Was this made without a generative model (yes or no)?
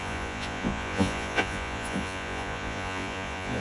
no